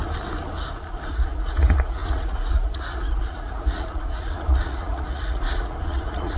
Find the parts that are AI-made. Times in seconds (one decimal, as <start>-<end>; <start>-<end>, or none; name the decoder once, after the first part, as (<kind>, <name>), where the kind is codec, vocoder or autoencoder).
1.1-6.4 (vocoder, Vocos)